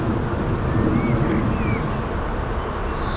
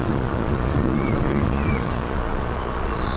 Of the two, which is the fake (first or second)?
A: second